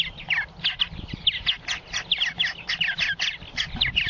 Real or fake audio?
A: real